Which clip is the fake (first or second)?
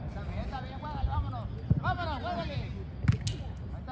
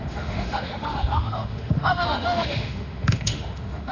second